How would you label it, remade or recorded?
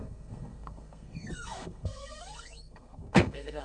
remade